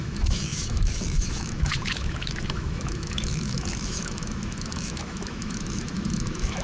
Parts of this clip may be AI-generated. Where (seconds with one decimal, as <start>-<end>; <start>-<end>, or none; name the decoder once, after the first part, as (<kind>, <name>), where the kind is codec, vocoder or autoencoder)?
0.0-6.6 (autoencoder, DAC-VAE)